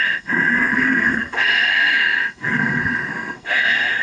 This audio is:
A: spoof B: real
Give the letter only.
A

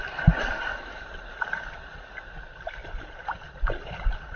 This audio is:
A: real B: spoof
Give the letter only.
B